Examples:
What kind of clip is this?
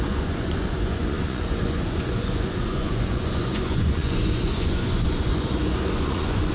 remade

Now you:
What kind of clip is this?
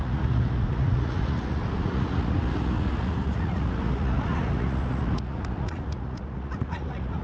remade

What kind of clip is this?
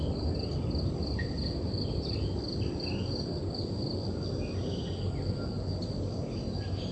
recorded